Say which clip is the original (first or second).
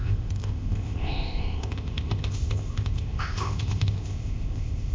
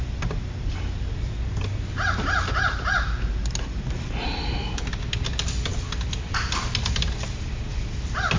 second